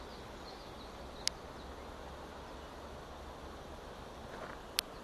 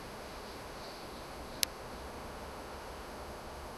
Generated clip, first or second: second